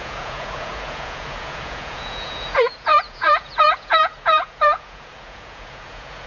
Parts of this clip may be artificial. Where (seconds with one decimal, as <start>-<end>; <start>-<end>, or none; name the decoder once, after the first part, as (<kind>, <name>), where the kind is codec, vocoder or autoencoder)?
0.0-6.3 (vocoder, Vocos)